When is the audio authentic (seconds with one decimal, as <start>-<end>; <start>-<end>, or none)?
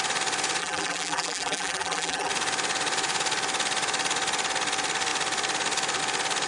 0.0-0.6; 2.3-6.5